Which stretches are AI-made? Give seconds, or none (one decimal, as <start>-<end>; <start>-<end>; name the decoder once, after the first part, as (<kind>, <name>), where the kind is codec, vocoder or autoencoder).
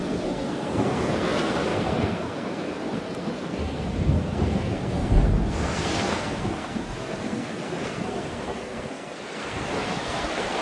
0.0-10.6 (codec, SNAC)